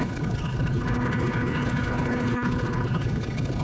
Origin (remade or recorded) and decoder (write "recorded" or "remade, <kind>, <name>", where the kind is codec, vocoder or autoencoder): remade, codec, HILCodec